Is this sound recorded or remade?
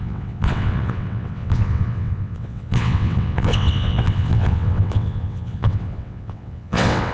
remade